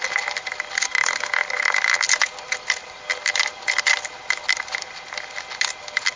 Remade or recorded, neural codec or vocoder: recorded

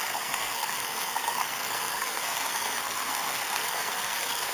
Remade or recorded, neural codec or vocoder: remade, codec, SNAC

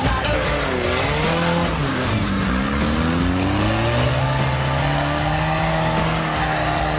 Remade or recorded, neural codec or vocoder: recorded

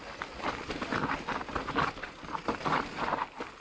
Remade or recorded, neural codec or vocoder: recorded